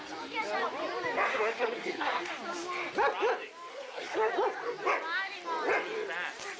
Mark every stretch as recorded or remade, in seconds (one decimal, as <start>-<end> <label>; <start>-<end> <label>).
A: 0.0-1.3 recorded; 1.3-2.3 remade; 2.3-3.7 recorded; 3.7-4.3 remade; 4.3-6.6 recorded